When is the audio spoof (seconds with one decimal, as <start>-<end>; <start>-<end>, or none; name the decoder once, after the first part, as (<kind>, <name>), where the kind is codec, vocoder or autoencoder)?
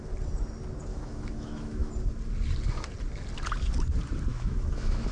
0.9-1.9 (autoencoder, DAC-VAE); 4.3-5.1